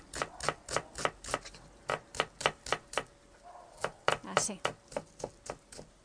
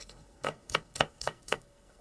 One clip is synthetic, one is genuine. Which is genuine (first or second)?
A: first